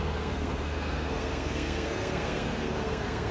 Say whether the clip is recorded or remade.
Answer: remade